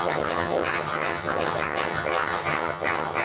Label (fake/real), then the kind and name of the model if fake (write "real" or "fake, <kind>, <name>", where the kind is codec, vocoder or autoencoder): fake, vocoder, HiFi-GAN